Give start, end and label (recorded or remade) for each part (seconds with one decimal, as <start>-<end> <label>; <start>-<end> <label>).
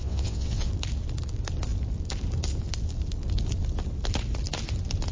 0.0-0.7 remade; 0.7-5.1 recorded